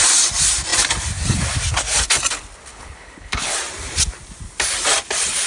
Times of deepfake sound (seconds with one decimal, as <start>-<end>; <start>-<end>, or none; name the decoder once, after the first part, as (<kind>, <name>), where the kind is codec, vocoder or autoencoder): 2.7-3.5 (codec, HILCodec)